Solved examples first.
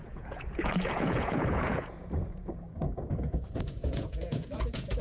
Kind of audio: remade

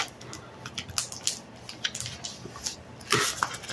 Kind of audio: recorded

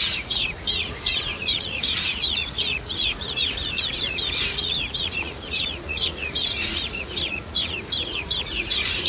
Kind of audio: remade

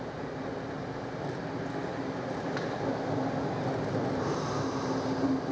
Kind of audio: recorded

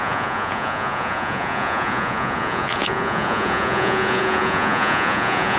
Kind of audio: remade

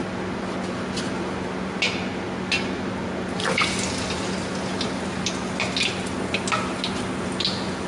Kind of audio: recorded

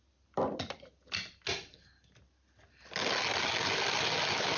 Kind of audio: recorded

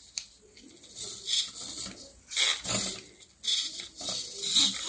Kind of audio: recorded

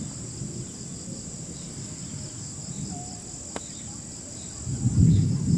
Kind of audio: recorded